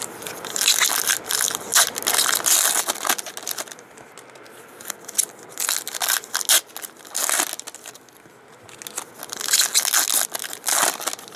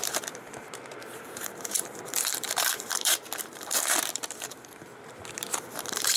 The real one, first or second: first